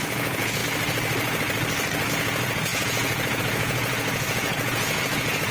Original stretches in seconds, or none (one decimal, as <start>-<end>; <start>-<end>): 0.6-2.1